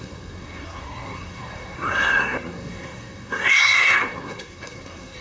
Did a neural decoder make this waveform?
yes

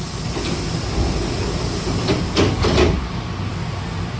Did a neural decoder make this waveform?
no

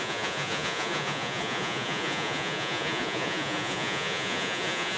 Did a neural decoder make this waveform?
yes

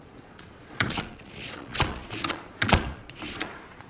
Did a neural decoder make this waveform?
yes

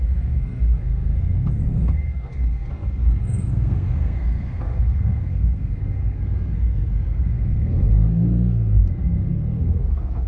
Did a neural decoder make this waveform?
yes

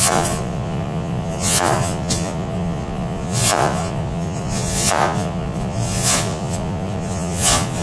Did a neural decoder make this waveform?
yes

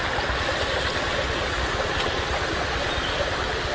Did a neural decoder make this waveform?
no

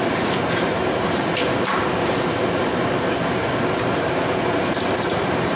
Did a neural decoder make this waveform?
yes